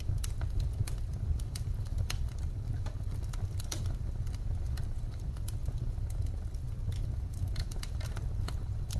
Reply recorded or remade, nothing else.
remade